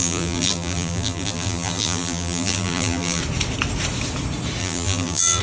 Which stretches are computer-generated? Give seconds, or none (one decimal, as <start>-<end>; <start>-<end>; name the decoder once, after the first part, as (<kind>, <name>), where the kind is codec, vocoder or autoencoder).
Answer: 0.0-3.2 (vocoder, BigVGAN v2); 4.6-5.4